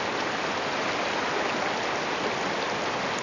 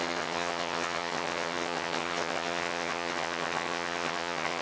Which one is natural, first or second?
first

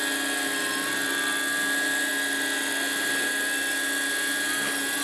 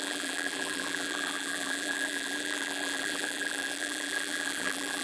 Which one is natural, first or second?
first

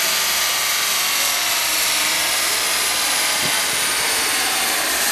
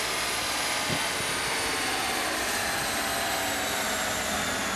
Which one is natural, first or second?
second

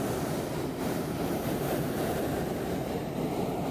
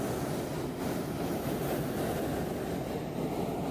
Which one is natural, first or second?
second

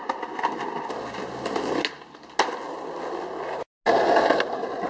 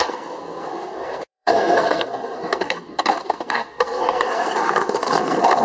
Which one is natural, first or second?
first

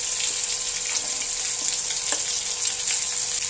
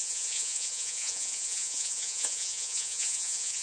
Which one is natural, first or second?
first